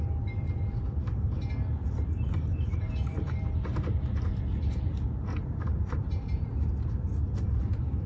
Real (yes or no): yes